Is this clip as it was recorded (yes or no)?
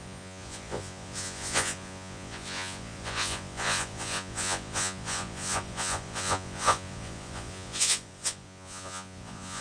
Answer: no